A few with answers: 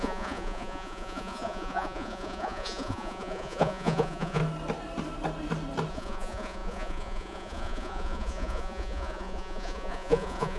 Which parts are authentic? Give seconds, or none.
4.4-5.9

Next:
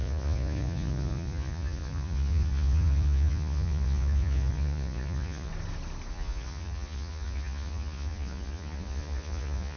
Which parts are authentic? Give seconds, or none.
5.5-6.1

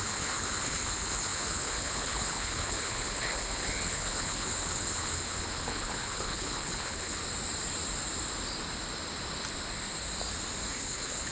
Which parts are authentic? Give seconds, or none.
7.2-10.8

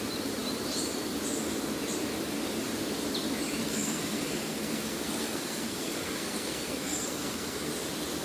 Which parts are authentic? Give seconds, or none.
0.0-3.6; 7.7-8.2

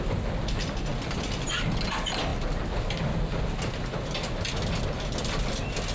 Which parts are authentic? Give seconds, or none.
0.0-5.9